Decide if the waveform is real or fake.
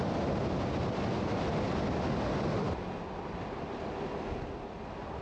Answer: real